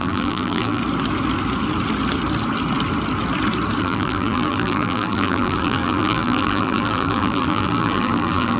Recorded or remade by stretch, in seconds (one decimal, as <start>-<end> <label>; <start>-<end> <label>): 0.0-0.8 remade; 0.8-3.8 recorded; 3.8-8.6 remade